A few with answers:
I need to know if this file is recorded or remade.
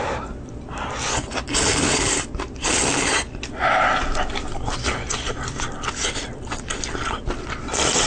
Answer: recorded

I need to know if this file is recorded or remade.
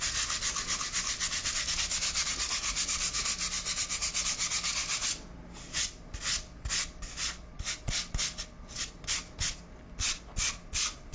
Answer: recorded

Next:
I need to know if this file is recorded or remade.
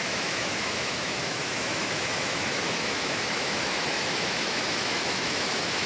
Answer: remade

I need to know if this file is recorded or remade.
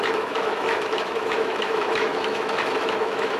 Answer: remade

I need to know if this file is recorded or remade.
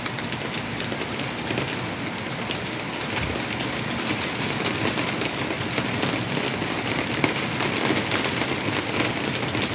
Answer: recorded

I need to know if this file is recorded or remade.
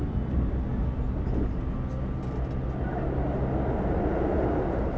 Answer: recorded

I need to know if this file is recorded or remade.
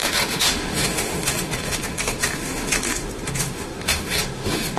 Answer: remade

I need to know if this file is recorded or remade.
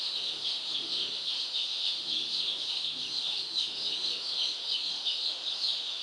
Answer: remade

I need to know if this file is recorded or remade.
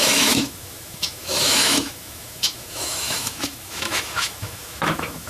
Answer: remade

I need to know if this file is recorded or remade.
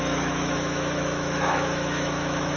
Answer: remade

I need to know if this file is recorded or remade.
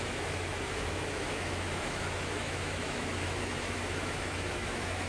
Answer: remade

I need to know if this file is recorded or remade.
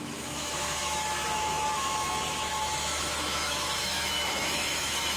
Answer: remade